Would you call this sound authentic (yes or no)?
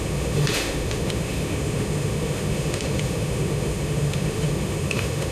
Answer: no